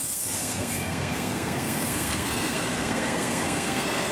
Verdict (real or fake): fake